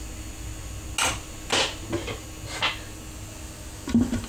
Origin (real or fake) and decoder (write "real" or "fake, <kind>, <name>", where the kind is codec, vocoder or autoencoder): real